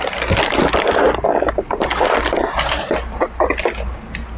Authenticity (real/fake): real